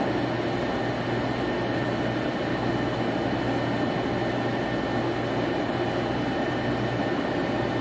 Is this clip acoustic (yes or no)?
yes